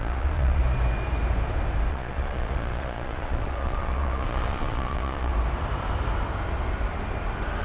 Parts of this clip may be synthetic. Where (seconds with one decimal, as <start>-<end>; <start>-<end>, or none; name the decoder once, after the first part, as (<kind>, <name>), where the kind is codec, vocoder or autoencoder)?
0.0-0.6 (vocoder, Vocos); 1.9-5.3